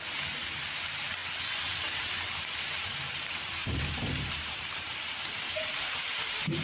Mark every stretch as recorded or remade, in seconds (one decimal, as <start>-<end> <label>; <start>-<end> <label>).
0.0-1.2 remade; 1.2-2.1 recorded; 2.1-6.6 remade

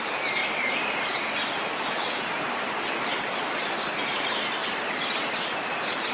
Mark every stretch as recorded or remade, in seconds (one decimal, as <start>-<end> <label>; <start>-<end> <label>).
0.0-0.4 recorded; 0.4-3.0 remade; 3.0-4.6 recorded; 4.6-5.2 remade; 5.2-6.1 recorded

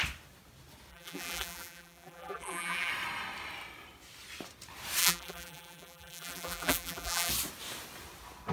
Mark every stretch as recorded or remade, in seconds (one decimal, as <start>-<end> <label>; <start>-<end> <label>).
0.0-0.9 recorded; 0.9-2.9 remade; 2.9-5.0 recorded; 5.0-7.3 remade; 7.3-8.5 recorded

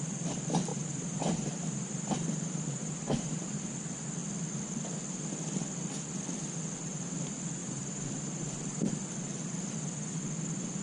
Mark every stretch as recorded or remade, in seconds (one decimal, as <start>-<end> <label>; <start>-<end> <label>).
0.0-0.7 recorded; 0.7-3.6 remade; 3.6-7.6 recorded; 7.6-8.9 remade; 8.9-10.8 recorded

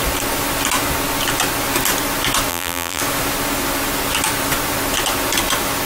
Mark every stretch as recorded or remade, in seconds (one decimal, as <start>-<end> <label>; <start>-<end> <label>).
0.0-2.5 recorded; 2.5-3.0 remade; 3.0-5.9 recorded

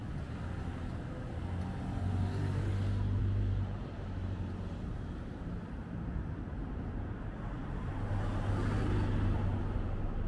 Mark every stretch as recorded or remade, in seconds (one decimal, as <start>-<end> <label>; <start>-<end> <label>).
0.0-3.2 recorded; 3.2-8.1 remade; 8.1-10.3 recorded

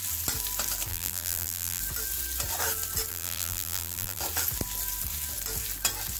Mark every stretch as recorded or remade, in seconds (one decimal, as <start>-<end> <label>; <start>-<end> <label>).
0.0-0.9 recorded; 0.9-1.8 remade; 1.8-3.1 recorded; 3.1-4.2 remade; 4.2-6.2 recorded

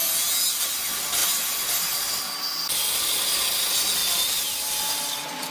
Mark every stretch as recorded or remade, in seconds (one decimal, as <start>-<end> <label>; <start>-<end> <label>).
0.0-4.0 recorded; 4.0-4.8 remade; 4.8-5.5 recorded